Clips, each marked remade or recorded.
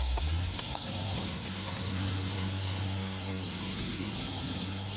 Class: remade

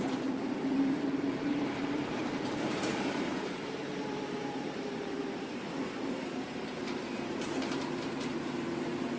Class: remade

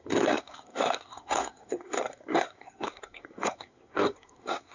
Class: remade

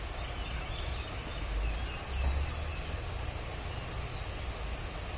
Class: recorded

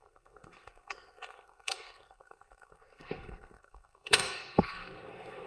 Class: remade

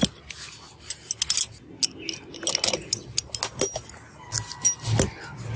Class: recorded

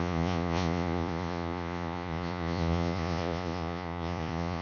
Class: remade